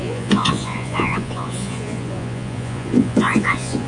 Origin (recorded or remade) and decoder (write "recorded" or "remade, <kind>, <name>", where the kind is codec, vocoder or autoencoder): remade, vocoder, Vocos